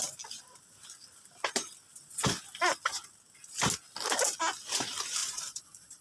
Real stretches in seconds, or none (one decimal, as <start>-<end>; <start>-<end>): 0.0-5.2